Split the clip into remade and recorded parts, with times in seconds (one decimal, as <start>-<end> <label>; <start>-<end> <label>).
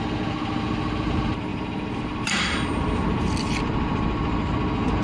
0.0-1.5 recorded; 1.5-3.6 remade; 3.6-5.0 recorded